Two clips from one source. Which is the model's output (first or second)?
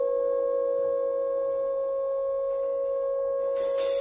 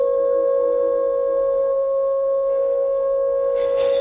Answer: second